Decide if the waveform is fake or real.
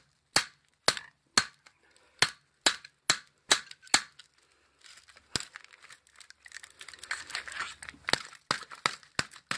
real